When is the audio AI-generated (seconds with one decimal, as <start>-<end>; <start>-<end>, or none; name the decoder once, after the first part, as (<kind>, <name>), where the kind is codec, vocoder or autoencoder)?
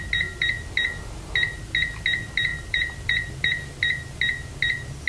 2.5-3.3 (vocoder, BigVGAN v2)